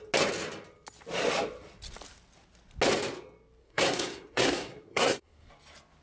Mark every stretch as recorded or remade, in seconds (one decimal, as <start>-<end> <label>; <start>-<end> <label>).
0.0-3.6 recorded; 3.6-5.5 remade; 5.5-6.0 recorded

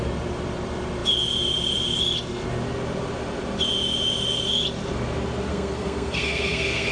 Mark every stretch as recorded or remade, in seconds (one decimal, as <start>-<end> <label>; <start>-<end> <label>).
0.0-5.5 recorded; 5.5-6.9 remade

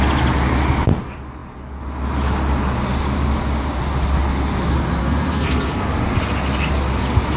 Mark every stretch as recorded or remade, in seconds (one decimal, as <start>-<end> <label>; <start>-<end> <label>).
0.0-5.0 recorded; 5.0-5.9 remade; 5.9-7.4 recorded

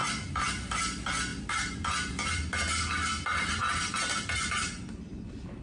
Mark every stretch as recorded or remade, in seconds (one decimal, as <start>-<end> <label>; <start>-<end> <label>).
0.0-5.6 recorded

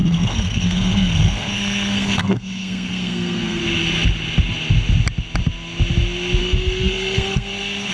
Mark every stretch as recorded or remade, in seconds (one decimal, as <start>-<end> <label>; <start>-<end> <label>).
0.0-3.6 remade; 3.6-6.4 recorded; 6.4-7.9 remade

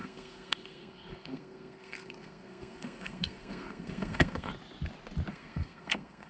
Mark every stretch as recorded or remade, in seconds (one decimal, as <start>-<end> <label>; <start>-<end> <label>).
0.0-4.5 remade; 4.5-5.3 recorded; 5.3-6.3 remade

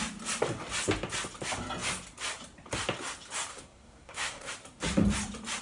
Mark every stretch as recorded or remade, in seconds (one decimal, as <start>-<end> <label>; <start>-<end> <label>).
0.0-3.5 recorded; 3.5-4.5 remade; 4.5-5.6 recorded

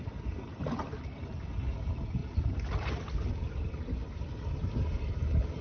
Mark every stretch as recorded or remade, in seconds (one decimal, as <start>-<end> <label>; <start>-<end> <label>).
0.0-5.6 recorded